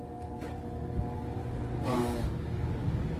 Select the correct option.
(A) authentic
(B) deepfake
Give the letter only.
B